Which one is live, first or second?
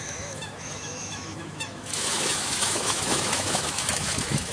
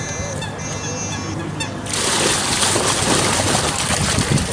second